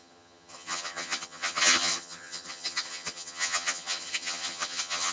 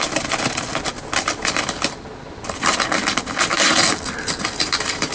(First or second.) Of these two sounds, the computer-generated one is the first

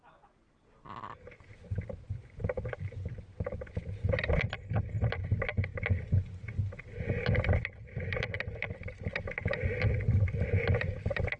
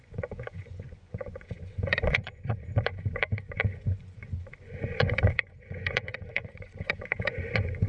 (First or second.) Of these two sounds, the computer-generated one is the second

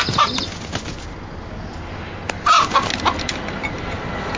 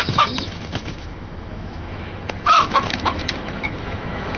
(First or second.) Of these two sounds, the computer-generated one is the second